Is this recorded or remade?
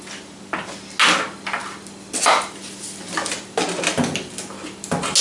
recorded